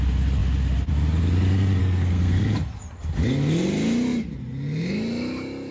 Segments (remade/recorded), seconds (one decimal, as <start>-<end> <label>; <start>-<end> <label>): 0.0-1.8 recorded; 1.8-2.4 remade; 2.4-5.7 recorded

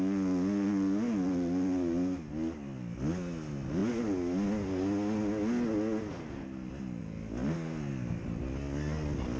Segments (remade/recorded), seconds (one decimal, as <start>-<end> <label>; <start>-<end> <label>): 0.0-9.4 recorded

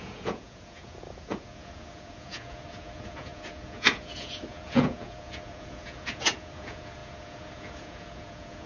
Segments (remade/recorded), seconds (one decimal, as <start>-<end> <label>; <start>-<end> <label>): 0.0-8.7 remade

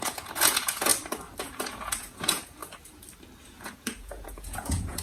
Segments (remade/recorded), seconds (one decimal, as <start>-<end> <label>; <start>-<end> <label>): 0.0-0.9 remade; 0.9-1.4 recorded; 1.4-2.6 remade; 2.6-3.4 recorded; 3.4-5.0 remade

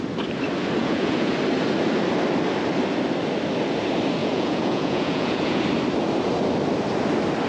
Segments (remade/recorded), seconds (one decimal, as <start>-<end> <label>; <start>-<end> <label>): 0.0-0.8 recorded; 0.8-1.3 remade; 1.3-4.2 recorded; 4.2-5.6 remade; 5.6-7.5 recorded

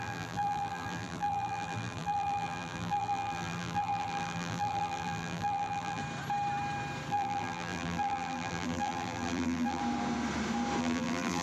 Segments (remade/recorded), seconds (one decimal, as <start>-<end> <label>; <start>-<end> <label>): 0.0-6.0 remade; 6.0-7.1 recorded; 7.1-9.8 remade; 9.8-10.8 recorded; 10.8-11.4 remade

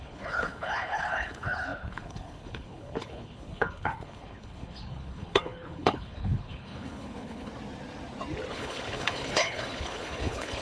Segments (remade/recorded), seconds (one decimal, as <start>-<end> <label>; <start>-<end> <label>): 0.0-7.5 remade; 7.5-8.5 recorded; 8.5-10.6 remade